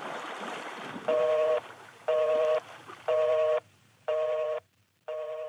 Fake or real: fake